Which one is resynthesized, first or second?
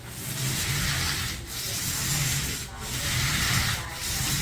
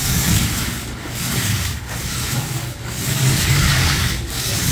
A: second